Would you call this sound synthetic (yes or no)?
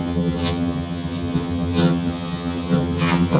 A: yes